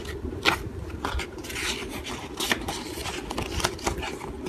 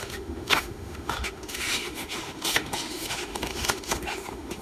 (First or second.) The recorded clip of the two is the first